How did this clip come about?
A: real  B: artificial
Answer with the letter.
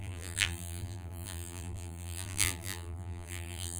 B